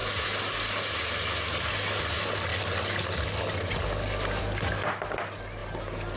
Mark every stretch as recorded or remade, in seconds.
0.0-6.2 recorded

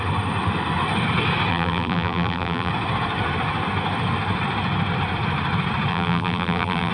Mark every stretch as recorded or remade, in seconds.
0.0-1.5 recorded; 1.5-2.7 remade; 2.7-5.9 recorded; 5.9-6.9 remade

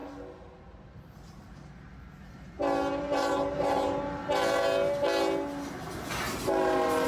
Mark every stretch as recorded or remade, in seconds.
0.0-0.6 recorded; 0.6-1.9 remade; 1.9-3.0 recorded; 3.0-4.2 remade; 4.2-7.1 recorded

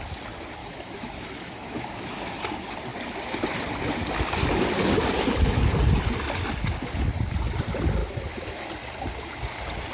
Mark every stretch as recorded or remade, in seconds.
0.0-0.6 recorded; 0.6-2.4 remade; 2.4-8.0 recorded; 8.0-8.7 remade; 8.7-9.9 recorded

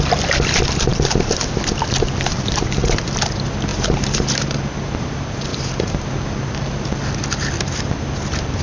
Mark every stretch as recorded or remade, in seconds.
0.0-2.3 recorded; 2.3-3.2 remade; 3.2-3.7 recorded; 3.7-5.1 remade; 5.1-5.5 recorded; 5.5-6.1 remade; 6.1-8.6 recorded

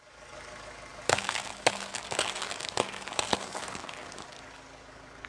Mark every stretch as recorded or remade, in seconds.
0.0-5.3 remade

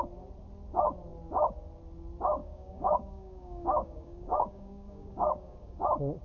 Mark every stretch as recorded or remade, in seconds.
0.0-2.4 recorded; 2.4-5.8 remade; 5.8-6.2 recorded

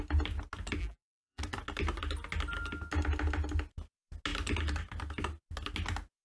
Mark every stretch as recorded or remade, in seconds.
0.0-0.8 recorded; 0.8-1.4 remade; 1.4-6.2 recorded